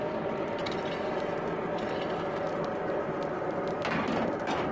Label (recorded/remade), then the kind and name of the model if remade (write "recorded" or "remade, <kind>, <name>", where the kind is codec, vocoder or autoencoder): recorded